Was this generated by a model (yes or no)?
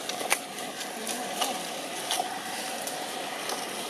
no